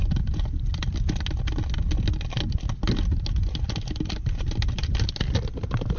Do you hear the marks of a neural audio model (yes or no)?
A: no